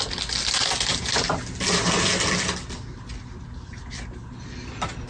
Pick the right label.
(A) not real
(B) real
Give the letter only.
B